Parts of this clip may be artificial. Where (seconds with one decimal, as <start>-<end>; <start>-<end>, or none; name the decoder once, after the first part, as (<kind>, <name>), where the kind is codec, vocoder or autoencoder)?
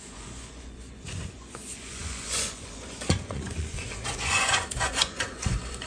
0.0-5.9 (vocoder, Vocos)